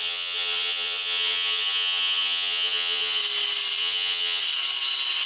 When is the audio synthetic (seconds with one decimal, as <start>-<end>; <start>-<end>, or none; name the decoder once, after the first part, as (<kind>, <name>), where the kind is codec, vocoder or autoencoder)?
0.0-3.2 (vocoder, HiFi-GAN); 3.8-4.4